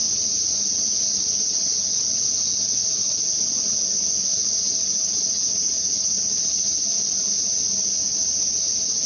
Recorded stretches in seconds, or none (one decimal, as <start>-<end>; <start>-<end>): 0.0-9.1